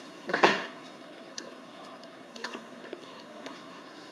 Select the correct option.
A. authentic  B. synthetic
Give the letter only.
B